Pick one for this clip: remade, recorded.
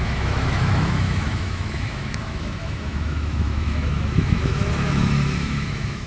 remade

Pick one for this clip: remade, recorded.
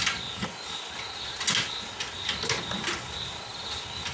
recorded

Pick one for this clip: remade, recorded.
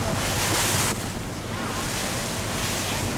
recorded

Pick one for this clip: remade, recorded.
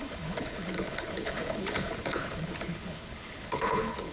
remade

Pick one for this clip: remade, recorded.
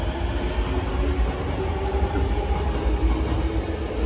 recorded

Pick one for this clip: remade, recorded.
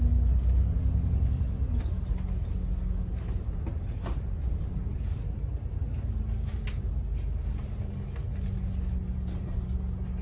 recorded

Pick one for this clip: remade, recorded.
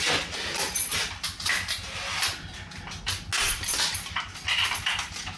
recorded